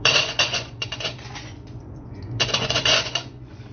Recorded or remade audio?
remade